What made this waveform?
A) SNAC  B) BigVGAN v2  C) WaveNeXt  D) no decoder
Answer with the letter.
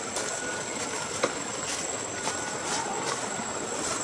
D